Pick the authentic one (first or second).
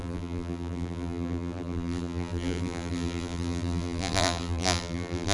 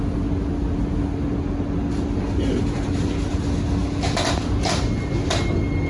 second